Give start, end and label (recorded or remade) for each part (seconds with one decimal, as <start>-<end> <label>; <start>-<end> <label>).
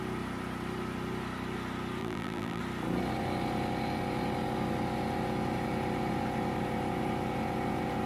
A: 0.0-2.0 recorded; 2.0-2.6 remade; 2.6-8.1 recorded